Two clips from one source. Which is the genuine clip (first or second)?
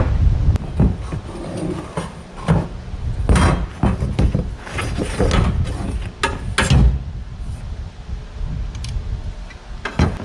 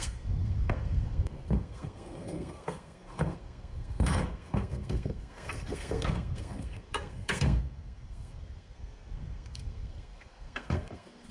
first